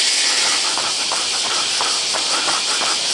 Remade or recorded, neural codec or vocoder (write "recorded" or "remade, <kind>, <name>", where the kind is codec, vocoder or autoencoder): recorded